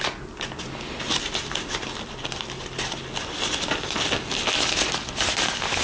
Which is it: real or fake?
real